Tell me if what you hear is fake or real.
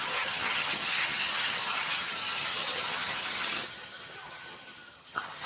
fake